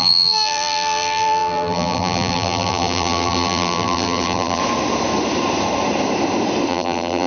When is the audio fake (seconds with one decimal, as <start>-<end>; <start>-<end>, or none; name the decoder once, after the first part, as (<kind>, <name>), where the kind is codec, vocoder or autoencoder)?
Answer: 0.0-4.6 (vocoder, BigVGAN v2); 6.7-7.3